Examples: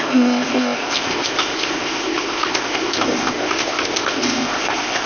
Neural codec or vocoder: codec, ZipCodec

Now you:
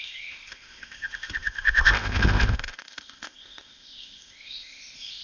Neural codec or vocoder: codec, ZipCodec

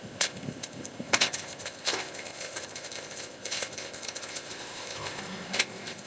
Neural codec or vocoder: codec, ZipCodec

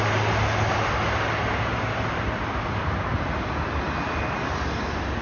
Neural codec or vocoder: none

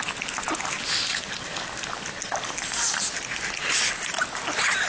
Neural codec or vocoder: none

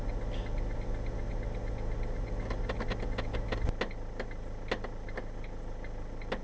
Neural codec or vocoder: none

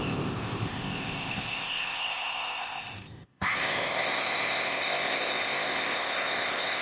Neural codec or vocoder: codec, ZipCodec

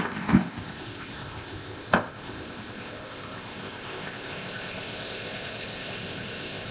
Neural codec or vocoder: codec, ZipCodec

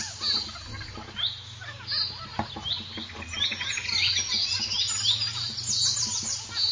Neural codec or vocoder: none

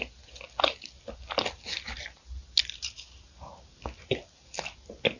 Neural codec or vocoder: none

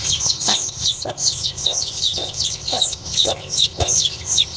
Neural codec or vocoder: codec, ZipCodec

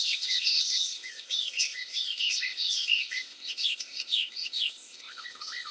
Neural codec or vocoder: codec, ZipCodec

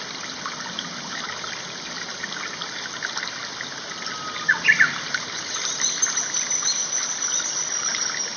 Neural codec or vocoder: none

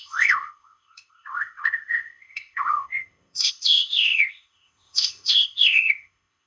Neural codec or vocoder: codec, ZipCodec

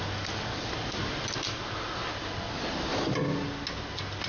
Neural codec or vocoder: none